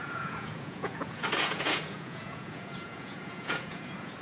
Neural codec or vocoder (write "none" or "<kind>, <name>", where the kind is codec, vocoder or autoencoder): vocoder, Vocos